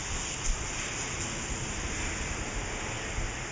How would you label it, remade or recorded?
recorded